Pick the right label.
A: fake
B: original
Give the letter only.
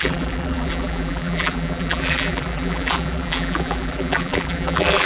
A